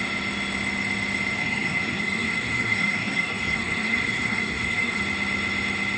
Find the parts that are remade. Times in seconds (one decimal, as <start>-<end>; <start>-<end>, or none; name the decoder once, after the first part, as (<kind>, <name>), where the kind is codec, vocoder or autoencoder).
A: 1.4-5.0 (codec, SNAC)